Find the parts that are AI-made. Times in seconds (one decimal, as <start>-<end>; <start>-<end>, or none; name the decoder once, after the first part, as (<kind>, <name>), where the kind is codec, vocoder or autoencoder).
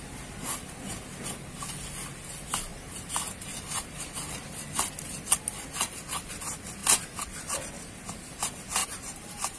8.8-9.6 (vocoder, BigVGAN v2)